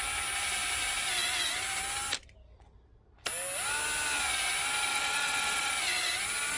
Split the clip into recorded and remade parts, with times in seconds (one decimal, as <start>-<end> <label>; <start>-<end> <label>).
0.0-4.9 recorded; 4.9-5.7 remade; 5.7-6.6 recorded